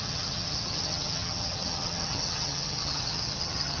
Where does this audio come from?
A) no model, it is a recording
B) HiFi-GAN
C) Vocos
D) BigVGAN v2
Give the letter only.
B